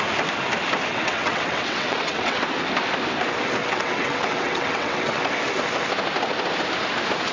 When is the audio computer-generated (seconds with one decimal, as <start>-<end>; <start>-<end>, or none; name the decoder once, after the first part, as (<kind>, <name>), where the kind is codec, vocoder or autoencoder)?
0.9-2.4 (vocoder, WaveNeXt); 3.6-5.2